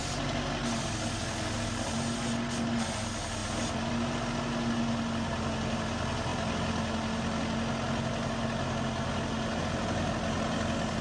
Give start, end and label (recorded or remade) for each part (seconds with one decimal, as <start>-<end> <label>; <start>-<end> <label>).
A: 0.0-11.0 recorded